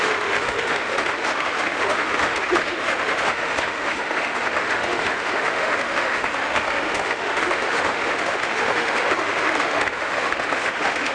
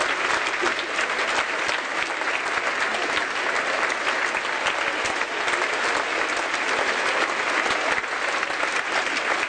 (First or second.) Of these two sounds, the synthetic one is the first